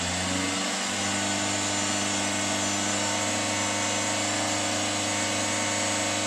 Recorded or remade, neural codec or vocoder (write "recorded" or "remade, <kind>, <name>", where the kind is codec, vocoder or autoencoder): recorded